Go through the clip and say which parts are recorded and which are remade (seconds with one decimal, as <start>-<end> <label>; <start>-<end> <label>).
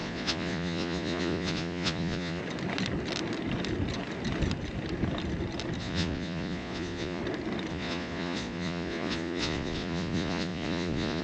0.0-2.4 remade; 2.4-5.8 recorded; 5.8-7.2 remade; 7.2-7.7 recorded; 7.7-11.2 remade